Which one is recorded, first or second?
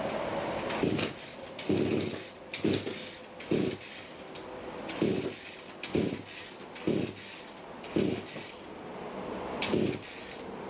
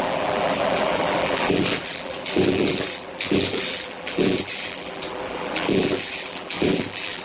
first